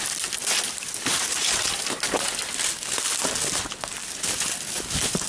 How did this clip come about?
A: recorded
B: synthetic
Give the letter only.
A